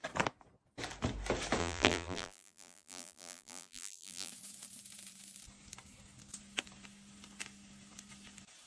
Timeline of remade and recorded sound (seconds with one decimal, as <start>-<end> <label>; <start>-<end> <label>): 0.0-1.6 recorded; 1.6-4.3 remade; 4.3-8.7 recorded

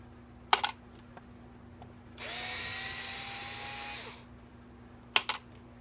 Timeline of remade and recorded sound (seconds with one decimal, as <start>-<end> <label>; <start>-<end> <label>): 0.0-5.8 recorded

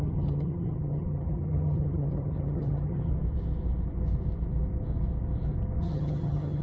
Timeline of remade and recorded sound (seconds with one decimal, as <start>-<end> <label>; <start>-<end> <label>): 0.0-3.1 remade; 3.1-5.8 recorded; 5.8-6.6 remade

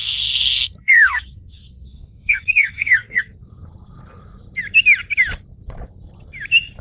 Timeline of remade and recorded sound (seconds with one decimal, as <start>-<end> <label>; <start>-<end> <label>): 0.0-3.2 remade; 3.2-6.8 recorded